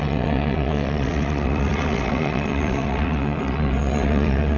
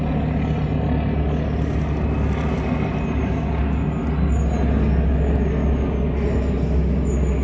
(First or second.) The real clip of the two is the second